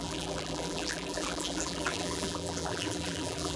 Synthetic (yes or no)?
yes